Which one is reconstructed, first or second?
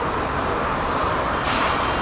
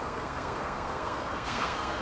second